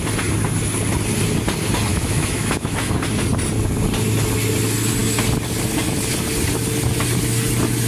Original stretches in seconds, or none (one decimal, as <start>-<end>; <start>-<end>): 0.0-1.9; 2.9-7.9